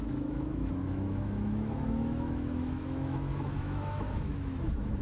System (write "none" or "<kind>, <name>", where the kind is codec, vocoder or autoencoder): autoencoder, DAC-VAE